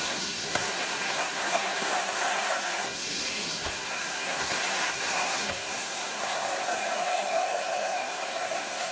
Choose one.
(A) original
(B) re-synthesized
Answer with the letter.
B